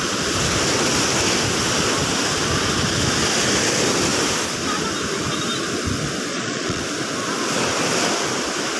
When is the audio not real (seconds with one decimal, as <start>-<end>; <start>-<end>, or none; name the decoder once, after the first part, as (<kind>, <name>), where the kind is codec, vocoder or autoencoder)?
6.3-6.8 (vocoder, Vocos)